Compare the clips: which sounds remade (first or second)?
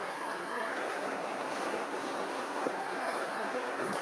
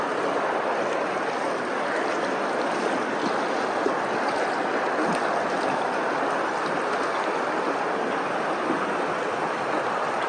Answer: first